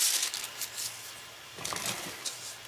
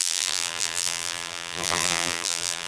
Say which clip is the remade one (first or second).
second